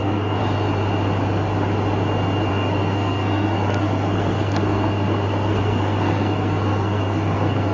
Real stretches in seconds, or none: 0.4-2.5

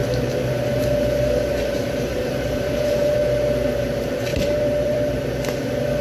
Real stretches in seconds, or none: 3.2-4.3; 5.4-6.0

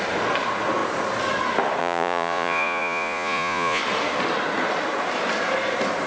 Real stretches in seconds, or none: 0.0-1.8; 3.8-6.1

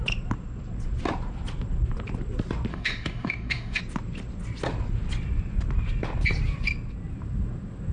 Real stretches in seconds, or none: 0.0-2.7; 3.8-7.9

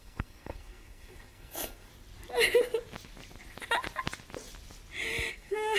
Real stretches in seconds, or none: 1.9-5.3

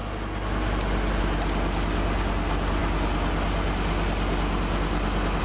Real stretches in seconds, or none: 0.0-5.4

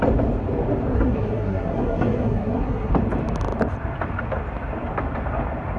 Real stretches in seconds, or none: 0.0-0.9; 2.9-5.8

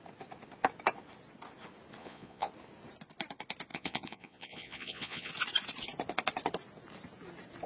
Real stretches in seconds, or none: 0.0-2.0; 2.5-3.7; 5.3-7.7